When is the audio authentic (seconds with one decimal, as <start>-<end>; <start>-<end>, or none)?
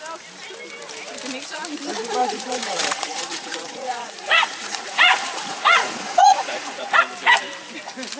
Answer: 0.0-2.2; 7.0-8.2